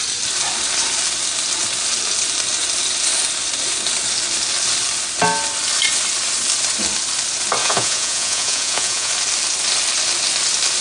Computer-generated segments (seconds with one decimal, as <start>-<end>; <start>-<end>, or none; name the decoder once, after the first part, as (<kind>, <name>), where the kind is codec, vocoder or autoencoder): 7.6-9.1 (vocoder, Vocos)